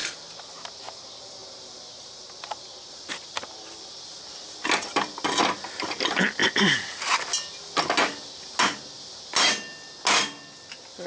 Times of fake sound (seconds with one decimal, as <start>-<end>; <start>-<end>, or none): 1.4-4.0